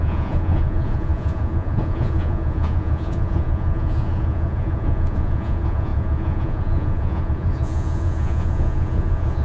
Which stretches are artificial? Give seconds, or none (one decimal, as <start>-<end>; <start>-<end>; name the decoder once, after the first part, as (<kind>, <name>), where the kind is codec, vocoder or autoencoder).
0.0-9.4 (vocoder, Vocos)